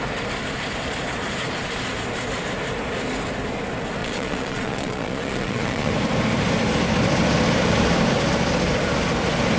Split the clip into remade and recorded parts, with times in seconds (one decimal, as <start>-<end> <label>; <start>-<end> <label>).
0.0-4.0 recorded; 4.0-5.9 remade; 5.9-9.6 recorded